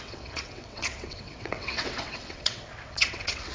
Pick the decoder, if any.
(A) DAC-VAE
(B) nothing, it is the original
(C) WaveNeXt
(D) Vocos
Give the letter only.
C